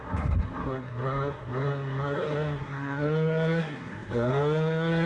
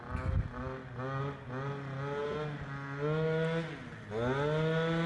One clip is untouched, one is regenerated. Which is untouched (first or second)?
second